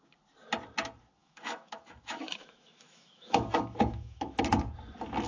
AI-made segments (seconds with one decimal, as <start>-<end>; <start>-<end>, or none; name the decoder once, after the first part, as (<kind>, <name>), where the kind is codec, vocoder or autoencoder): 1.2-4.4 (autoencoder, DAC-VAE)